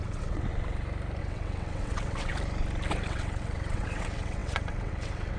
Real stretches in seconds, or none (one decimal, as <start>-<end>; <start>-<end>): 0.5-1.2; 2.3-3.0

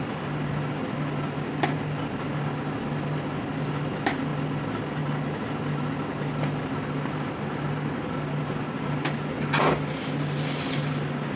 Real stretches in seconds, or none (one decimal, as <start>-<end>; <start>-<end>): 0.0-11.4

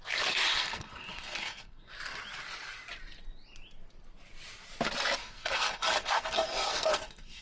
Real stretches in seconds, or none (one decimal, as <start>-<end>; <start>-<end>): 0.0-0.5; 1.9-5.2

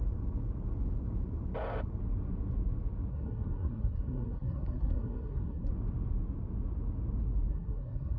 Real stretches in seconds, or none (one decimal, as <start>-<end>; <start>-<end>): 0.0-3.1; 5.7-7.5

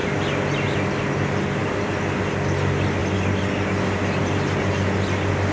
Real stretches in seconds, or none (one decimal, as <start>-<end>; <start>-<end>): 0.0-5.5

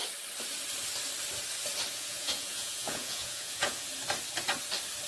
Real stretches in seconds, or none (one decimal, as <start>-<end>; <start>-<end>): 0.0-1.9; 3.9-5.1

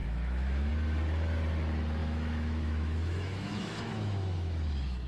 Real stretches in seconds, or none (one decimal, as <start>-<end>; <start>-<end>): 0.7-2.0